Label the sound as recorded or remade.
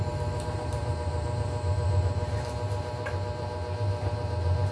remade